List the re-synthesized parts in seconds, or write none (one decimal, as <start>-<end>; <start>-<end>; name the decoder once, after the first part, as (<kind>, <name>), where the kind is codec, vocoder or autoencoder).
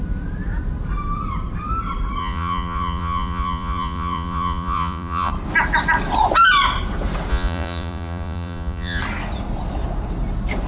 2.2-5.3 (vocoder, Vocos); 7.3-9.0